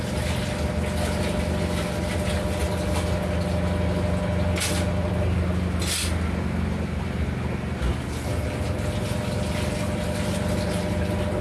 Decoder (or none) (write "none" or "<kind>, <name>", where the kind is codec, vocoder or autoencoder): none